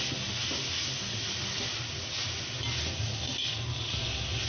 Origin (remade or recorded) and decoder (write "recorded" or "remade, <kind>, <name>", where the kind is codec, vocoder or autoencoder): recorded